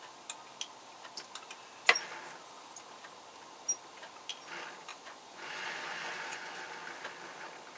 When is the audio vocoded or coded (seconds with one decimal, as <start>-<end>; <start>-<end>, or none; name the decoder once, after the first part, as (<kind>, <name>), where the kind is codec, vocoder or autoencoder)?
4.9-6.6 (vocoder, Vocos)